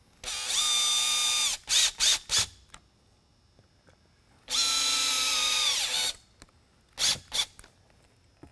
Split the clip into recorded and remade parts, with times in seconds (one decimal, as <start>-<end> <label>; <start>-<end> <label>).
0.0-8.5 recorded